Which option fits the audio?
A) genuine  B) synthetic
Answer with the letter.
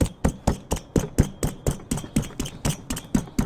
A